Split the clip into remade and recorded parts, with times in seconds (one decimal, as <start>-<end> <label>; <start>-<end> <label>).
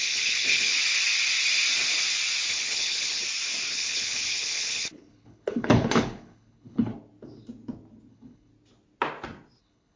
0.0-0.7 remade; 0.7-2.5 recorded; 2.5-3.2 remade; 3.2-3.7 recorded; 3.7-6.9 remade; 6.9-8.1 recorded; 8.1-8.5 remade; 8.5-9.6 recorded; 9.6-10.0 remade